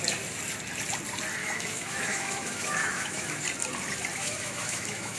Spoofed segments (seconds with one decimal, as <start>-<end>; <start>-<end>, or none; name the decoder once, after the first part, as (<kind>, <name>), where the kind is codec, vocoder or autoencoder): 1.4-3.4 (autoencoder, DAC-VAE); 4.1-5.2

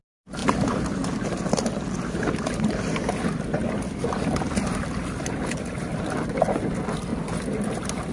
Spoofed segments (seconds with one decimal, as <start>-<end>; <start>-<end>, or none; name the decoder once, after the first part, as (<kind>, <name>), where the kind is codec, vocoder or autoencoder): none

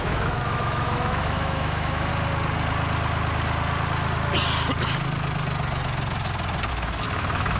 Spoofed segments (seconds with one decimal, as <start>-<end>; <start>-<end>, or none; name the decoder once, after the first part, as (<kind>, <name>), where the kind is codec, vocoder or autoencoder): 0.0-2.1 (autoencoder, DAC-VAE); 6.7-7.6